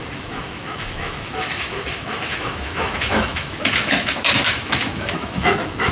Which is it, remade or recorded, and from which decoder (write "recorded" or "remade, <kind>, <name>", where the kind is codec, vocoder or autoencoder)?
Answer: remade, autoencoder, DAC-VAE